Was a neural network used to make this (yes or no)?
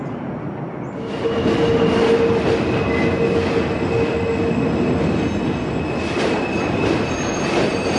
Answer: no